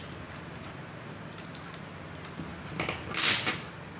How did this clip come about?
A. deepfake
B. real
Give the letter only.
B